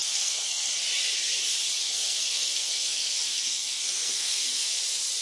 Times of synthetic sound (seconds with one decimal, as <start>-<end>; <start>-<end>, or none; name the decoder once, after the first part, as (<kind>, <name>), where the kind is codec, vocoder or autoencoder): 0.0-0.7 (codec, SNAC); 1.8-4.8